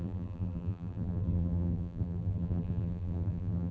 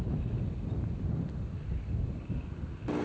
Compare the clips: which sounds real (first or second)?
second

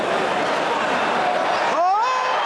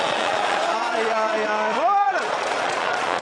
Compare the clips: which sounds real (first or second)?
first